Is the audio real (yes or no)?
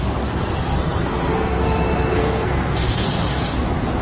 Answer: no